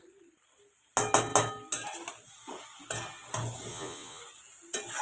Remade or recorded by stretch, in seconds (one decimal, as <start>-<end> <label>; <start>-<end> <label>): 0.0-3.7 recorded; 3.7-4.2 remade; 4.2-5.0 recorded